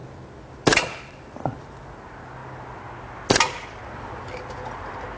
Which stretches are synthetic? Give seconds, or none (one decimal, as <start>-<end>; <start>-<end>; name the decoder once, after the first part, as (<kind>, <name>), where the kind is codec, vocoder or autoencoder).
none